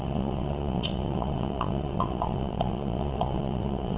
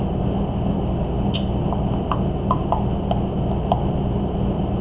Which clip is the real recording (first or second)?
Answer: second